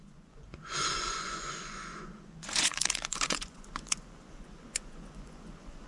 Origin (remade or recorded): remade